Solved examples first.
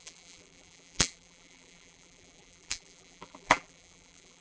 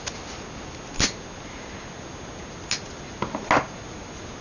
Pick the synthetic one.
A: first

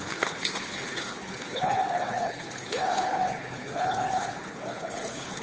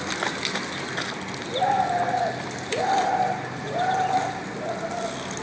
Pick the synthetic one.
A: first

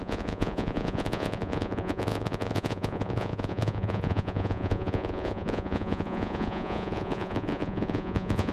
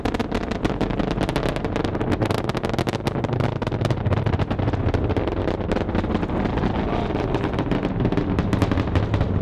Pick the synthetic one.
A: first